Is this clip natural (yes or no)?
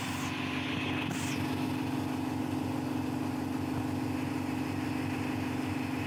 yes